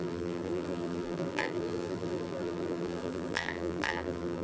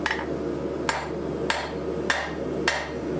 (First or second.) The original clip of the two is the second